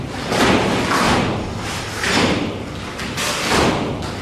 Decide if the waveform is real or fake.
real